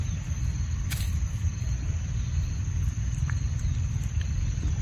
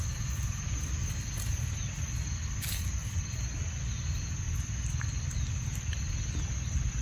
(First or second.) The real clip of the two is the second